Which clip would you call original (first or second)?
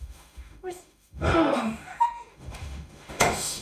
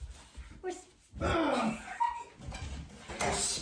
second